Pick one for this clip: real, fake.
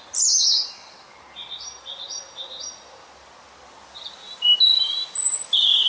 real